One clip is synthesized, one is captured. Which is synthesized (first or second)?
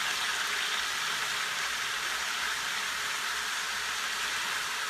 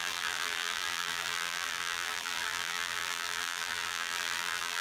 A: second